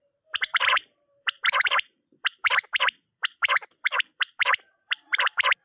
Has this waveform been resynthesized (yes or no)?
yes